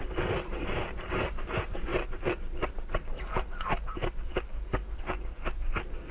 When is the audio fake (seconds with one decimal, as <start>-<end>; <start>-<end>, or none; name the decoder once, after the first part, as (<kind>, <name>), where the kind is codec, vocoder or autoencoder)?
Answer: none